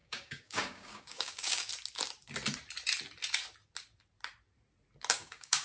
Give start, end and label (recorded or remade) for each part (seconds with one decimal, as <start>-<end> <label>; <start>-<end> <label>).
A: 0.0-1.7 remade; 1.7-5.1 recorded; 5.1-5.6 remade